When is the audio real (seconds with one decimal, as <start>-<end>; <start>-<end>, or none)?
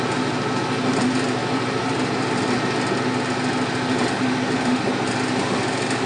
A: 0.0-6.1